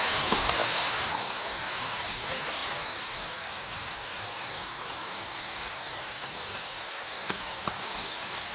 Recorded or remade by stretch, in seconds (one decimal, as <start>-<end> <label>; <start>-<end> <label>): 0.0-8.5 remade